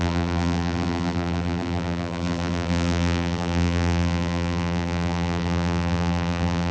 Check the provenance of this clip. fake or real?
fake